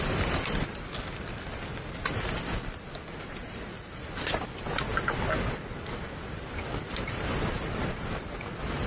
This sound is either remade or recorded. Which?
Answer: recorded